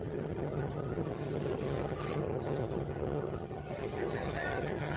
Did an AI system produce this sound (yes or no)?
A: yes